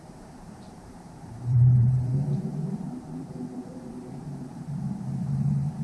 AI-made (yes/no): yes